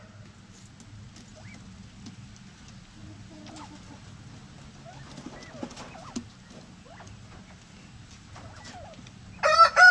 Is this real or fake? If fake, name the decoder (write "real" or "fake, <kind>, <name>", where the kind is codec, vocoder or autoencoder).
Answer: real